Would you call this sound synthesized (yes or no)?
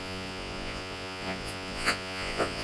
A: yes